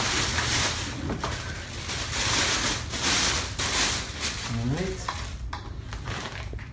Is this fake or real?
real